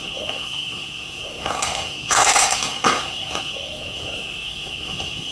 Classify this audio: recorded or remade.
remade